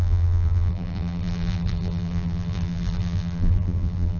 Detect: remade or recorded remade